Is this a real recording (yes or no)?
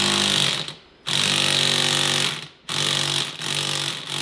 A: yes